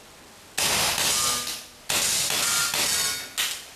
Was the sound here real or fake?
real